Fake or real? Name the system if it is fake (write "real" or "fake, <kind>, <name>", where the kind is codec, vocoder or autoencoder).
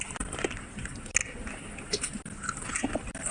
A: real